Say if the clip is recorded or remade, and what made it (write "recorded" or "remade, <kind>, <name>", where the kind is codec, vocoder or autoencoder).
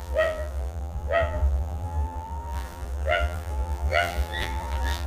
remade, vocoder, BigVGAN v2